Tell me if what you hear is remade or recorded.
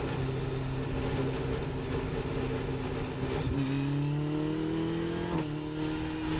recorded